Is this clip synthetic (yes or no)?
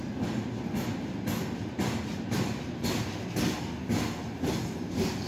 no